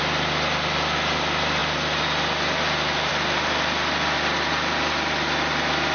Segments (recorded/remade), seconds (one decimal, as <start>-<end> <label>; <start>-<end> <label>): 0.0-5.9 recorded